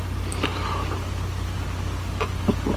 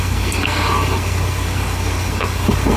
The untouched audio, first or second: first